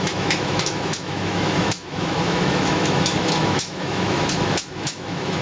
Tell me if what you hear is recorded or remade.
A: remade